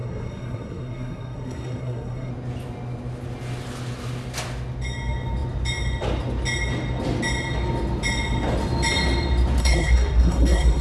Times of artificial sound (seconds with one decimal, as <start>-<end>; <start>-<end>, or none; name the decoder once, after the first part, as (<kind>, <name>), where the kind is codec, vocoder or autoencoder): 0.0-2.3 (codec, SNAC); 9.6-10.8